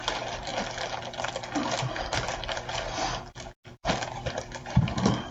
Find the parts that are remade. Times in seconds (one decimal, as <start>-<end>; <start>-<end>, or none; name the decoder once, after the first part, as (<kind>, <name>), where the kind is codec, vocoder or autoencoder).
0.0-0.5 (vocoder, BigVGAN v2); 3.7-5.3